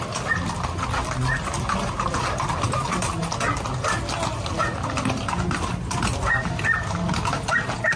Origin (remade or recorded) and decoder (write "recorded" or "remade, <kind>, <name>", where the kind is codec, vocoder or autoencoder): recorded